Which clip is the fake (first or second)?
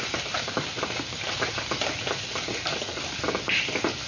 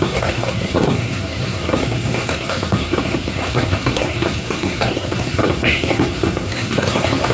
second